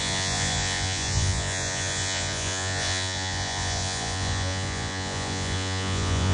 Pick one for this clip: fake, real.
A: fake